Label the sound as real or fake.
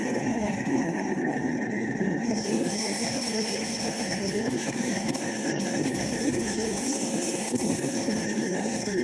fake